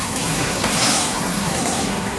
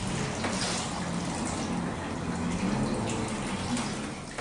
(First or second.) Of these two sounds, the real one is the second